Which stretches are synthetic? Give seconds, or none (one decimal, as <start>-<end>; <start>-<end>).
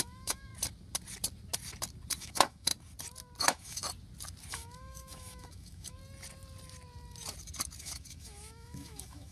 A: 0.0-0.5; 2.2-2.7; 3.4-3.8; 4.5-6.0; 7.8-9.3